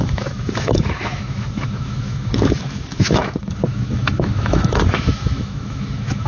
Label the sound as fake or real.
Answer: fake